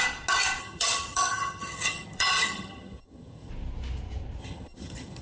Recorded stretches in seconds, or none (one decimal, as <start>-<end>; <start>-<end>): 0.0-0.6; 3.5-4.4